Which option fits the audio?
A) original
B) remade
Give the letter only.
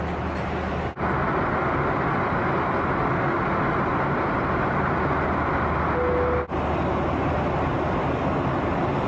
A